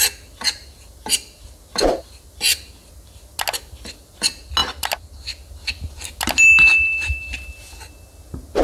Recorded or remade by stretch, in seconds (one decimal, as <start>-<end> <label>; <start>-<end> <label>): 0.0-8.6 recorded